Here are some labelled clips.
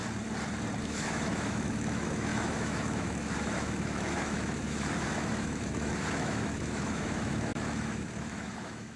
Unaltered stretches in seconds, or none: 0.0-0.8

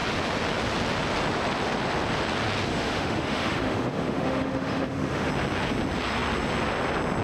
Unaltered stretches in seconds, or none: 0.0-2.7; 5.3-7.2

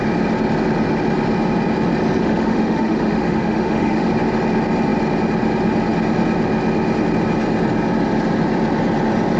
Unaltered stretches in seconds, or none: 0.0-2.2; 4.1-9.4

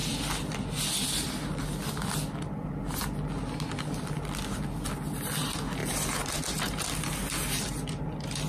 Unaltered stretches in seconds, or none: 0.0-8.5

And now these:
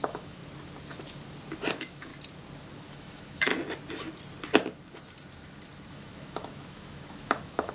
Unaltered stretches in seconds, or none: 0.4-1.7; 2.1-2.9; 3.5-5.9

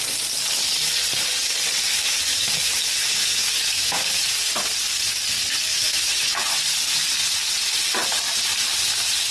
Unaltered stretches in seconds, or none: 0.0-1.8; 4.3-5.7; 6.4-9.3

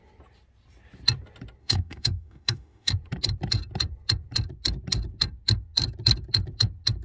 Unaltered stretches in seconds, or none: 0.0-1.6; 2.9-7.0

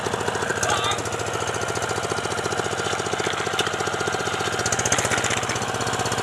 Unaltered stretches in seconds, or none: 0.0-6.2